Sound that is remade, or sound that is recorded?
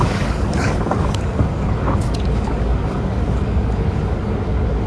remade